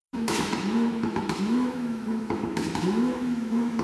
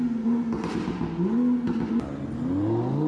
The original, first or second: second